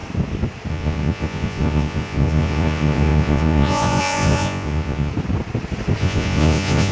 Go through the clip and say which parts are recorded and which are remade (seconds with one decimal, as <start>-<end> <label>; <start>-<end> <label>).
0.0-0.7 recorded; 0.7-5.1 remade; 5.1-6.0 recorded; 6.0-6.9 remade